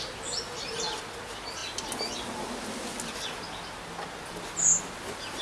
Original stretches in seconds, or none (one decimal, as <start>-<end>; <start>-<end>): 0.0-5.4